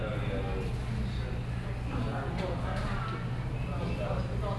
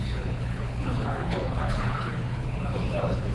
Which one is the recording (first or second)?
first